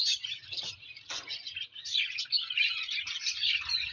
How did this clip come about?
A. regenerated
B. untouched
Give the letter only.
B